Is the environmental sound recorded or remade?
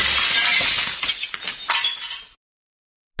recorded